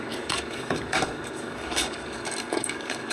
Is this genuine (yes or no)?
no